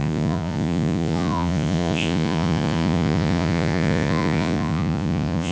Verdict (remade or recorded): remade